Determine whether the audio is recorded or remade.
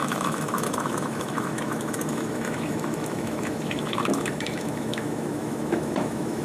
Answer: remade